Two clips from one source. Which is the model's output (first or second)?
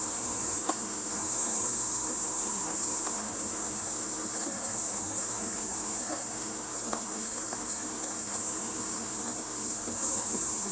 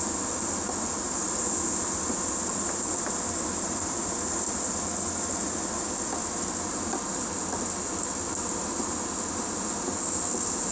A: first